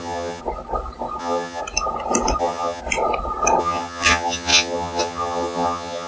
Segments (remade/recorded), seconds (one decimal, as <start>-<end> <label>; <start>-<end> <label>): 0.0-0.4 remade; 0.4-1.2 recorded; 1.2-1.6 remade; 1.6-2.4 recorded; 2.4-2.8 remade; 2.8-3.6 recorded; 3.6-6.1 remade